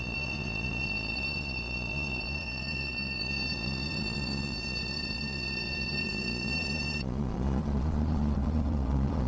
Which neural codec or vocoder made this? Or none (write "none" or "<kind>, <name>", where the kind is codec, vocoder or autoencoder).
vocoder, Vocos